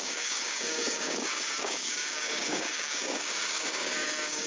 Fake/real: fake